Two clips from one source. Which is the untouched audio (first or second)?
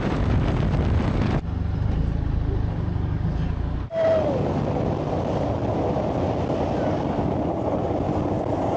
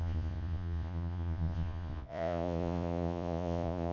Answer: first